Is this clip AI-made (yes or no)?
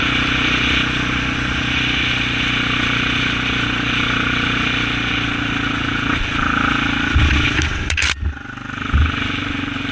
no